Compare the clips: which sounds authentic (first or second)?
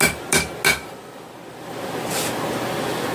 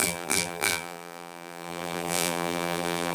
first